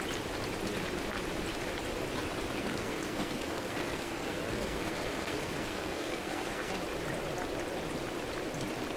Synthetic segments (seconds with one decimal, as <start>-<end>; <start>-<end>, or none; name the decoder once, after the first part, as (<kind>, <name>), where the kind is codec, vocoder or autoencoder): 2.6-6.7 (codec, SNAC)